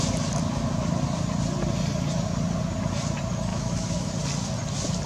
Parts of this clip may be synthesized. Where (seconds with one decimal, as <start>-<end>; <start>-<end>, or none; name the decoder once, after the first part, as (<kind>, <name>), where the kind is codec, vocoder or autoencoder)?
3.5-4.1 (autoencoder, DAC-VAE)